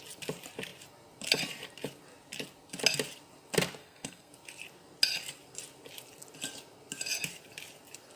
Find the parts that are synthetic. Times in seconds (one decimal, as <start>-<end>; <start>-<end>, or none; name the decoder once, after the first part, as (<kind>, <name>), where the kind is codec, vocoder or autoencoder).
3.8-4.3 (codec, SNAC)